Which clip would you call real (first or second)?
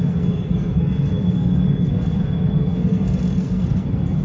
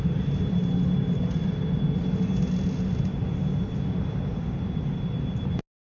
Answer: second